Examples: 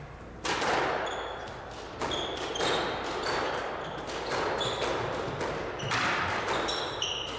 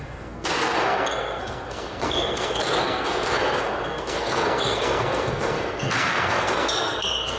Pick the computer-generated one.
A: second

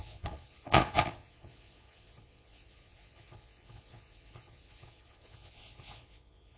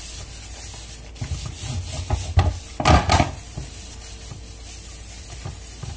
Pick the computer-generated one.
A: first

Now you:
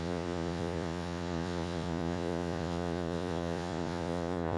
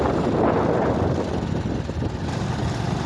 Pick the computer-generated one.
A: first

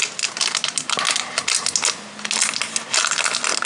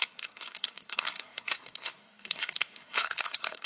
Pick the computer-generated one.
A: second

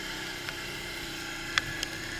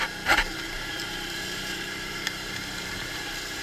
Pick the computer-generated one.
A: second